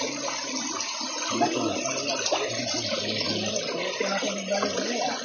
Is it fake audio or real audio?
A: real